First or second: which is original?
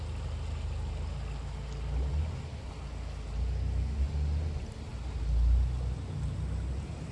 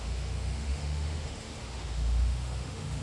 first